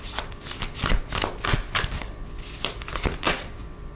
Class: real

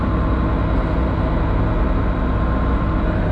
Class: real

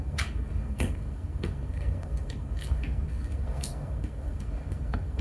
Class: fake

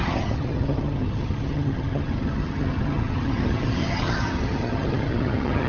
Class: fake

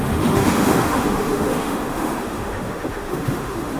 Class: fake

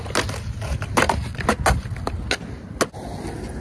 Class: real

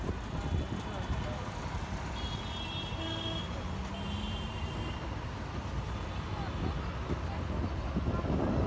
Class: real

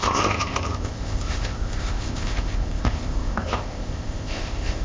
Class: fake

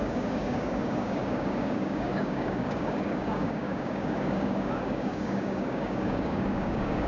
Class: fake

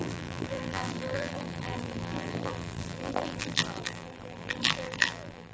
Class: fake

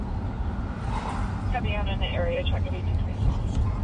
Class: fake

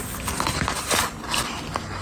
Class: real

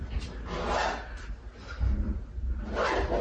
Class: real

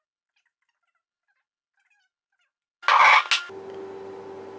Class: real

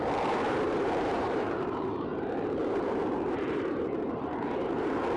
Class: fake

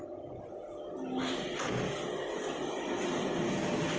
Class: real